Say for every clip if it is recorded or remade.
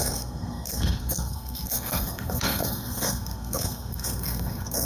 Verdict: remade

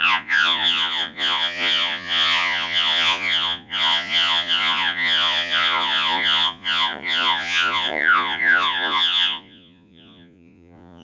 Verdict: remade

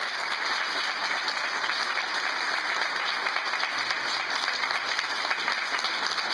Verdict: recorded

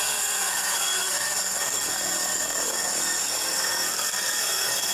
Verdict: remade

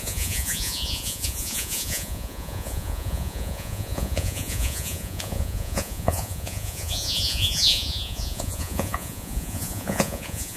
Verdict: remade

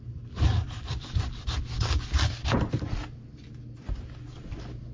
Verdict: recorded